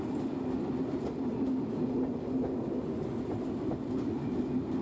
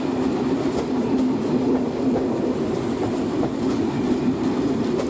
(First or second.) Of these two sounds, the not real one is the second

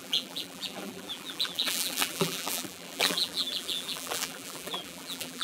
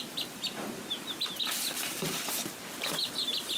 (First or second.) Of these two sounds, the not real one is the first